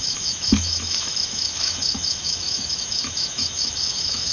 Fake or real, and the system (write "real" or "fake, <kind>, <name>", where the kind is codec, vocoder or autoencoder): fake, autoencoder, DAC-VAE